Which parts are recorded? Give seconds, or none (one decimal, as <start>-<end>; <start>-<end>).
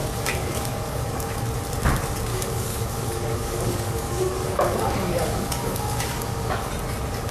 1.4-2.3; 6.7-7.3